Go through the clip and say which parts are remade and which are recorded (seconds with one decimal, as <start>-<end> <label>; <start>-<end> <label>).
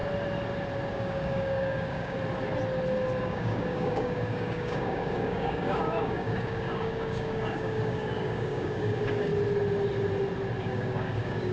0.0-0.9 recorded; 0.9-2.2 remade; 2.2-3.2 recorded; 3.2-9.3 remade; 9.3-10.6 recorded; 10.6-11.5 remade